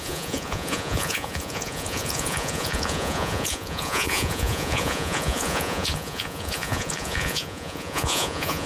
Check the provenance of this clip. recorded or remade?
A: remade